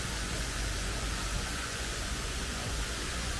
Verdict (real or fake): fake